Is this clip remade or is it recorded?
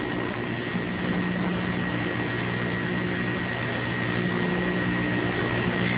recorded